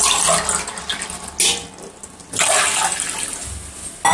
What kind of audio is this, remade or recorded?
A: recorded